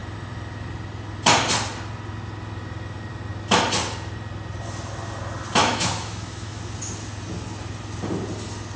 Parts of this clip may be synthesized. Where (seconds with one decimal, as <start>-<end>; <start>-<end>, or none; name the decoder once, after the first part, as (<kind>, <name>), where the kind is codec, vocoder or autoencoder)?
5.6-6.6 (autoencoder, DAC-VAE)